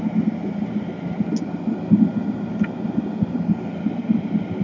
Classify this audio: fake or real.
real